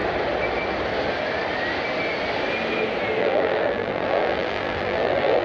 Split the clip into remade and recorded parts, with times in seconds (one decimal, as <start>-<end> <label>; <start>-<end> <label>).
0.0-3.2 recorded; 3.2-5.4 remade